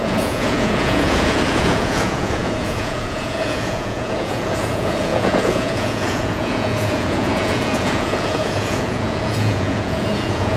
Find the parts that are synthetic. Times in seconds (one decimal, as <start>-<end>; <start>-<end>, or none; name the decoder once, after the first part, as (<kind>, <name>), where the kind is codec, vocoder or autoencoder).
0.0-10.6 (vocoder, Vocos)